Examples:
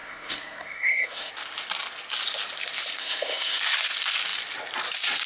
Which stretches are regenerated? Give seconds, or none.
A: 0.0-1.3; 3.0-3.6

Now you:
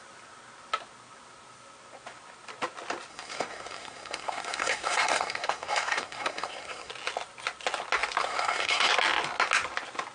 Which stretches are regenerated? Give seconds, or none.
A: 3.1-6.9; 8.2-8.9

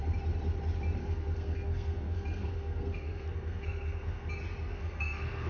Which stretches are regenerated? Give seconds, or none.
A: 1.0-4.3; 4.7-5.5

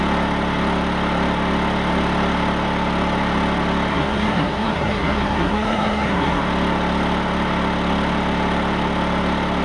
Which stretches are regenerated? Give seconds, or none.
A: 3.9-6.4

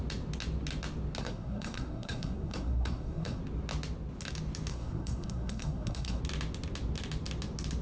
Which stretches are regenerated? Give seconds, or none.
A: 1.2-3.4; 4.7-6.2

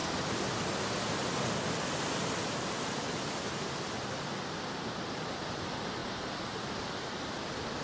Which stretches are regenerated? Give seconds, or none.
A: none

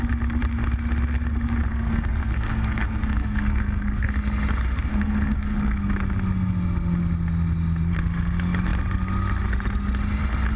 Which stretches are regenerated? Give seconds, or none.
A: 1.7-4.1; 4.9-5.9